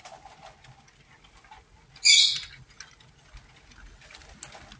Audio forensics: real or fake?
real